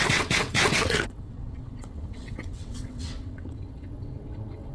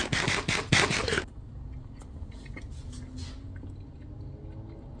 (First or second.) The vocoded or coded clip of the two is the first